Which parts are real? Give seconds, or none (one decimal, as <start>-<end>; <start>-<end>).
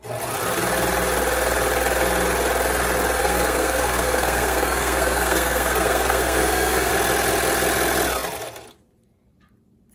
0.0-3.2; 6.9-9.9